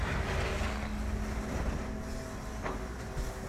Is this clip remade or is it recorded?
recorded